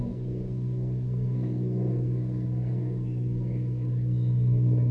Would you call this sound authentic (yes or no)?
no